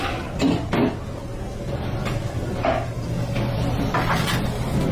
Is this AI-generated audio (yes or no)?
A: no